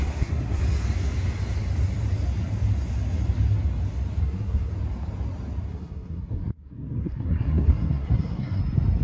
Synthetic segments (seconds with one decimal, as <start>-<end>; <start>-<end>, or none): 0.0-0.6; 4.2-4.7; 5.7-8.6